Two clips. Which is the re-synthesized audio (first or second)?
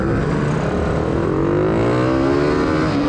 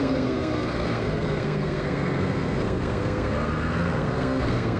second